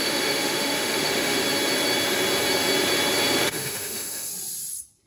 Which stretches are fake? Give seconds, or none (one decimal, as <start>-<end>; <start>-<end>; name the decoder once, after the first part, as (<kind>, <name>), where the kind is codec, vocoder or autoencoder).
0.0-1.4 (autoencoder, DAC-VAE); 3.4-4.3